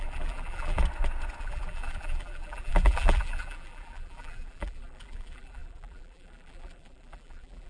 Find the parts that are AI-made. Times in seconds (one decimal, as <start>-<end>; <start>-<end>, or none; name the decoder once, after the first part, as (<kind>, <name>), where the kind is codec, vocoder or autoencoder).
0.0-0.8 (vocoder, BigVGAN v2); 1.4-7.7